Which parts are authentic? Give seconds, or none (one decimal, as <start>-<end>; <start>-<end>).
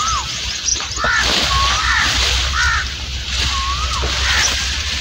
0.7-1.5